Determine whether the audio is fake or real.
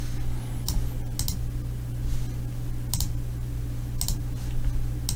real